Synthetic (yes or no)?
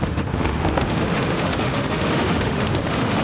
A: yes